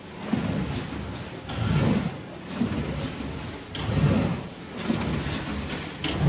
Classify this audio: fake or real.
real